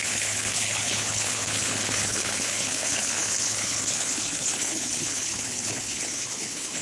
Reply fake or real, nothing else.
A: fake